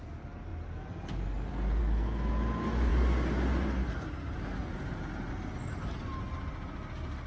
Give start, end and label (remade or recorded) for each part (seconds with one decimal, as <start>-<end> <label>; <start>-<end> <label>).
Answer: 0.0-1.8 recorded; 1.8-2.3 remade; 2.3-7.3 recorded